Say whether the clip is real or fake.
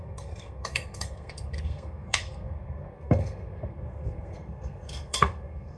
fake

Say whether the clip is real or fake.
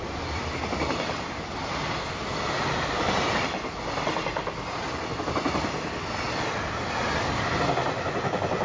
real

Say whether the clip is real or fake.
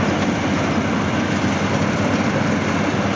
real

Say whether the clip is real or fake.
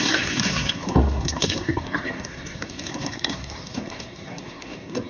fake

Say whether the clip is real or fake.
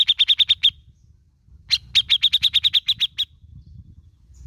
real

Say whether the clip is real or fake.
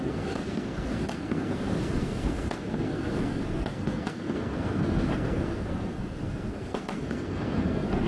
fake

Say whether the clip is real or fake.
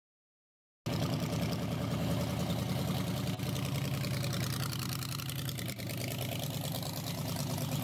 real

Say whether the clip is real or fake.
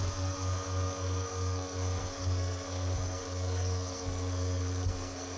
fake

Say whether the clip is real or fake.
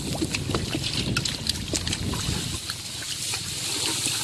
real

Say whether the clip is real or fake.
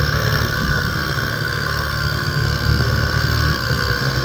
fake